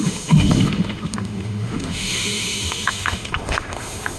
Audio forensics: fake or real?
fake